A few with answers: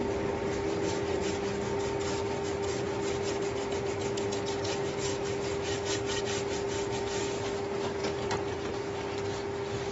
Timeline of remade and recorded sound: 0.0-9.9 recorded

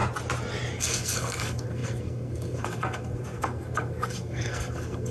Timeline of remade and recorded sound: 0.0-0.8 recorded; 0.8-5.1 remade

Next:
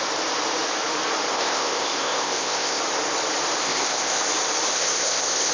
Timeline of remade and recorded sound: 0.0-1.3 recorded; 1.3-2.8 remade; 2.8-3.6 recorded; 3.6-4.2 remade; 4.2-4.7 recorded; 4.7-5.5 remade